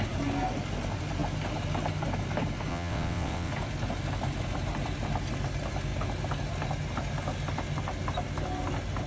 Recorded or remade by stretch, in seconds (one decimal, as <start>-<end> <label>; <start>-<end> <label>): 0.0-2.7 recorded; 2.7-3.5 remade; 3.5-9.1 recorded